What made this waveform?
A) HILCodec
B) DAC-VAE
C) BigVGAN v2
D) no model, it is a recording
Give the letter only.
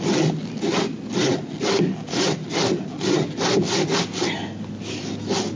D